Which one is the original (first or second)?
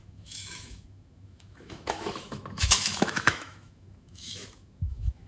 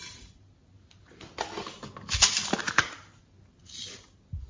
second